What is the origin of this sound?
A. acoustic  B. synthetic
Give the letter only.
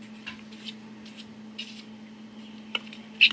A